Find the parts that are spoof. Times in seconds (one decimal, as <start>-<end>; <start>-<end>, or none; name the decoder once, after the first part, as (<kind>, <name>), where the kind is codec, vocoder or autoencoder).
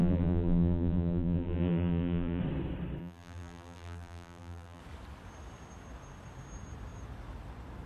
0.0-2.4 (vocoder, BigVGAN v2); 3.0-4.8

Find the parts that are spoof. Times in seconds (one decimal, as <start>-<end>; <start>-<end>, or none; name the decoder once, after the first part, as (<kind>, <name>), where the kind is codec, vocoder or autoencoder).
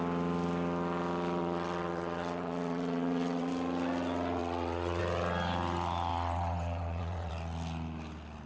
1.4-3.5 (vocoder, WaveNeXt); 4.4-5.0; 6.1-7.3